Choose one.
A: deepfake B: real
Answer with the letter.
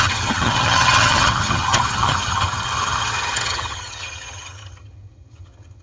A